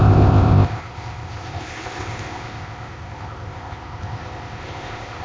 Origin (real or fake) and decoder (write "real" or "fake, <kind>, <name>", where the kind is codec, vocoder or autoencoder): fake, codec, ZipCodec